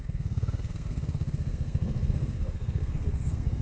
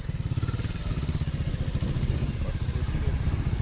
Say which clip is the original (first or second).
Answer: second